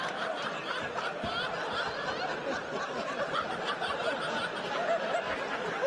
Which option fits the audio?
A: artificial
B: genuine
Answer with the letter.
B